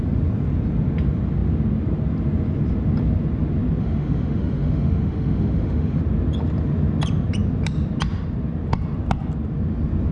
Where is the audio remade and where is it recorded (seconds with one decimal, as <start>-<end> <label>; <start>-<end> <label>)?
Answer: 0.0-3.8 recorded; 3.8-6.0 remade; 6.0-10.1 recorded